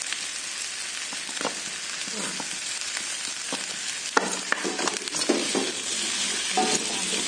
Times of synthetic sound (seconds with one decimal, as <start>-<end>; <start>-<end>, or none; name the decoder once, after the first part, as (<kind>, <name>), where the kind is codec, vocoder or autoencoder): none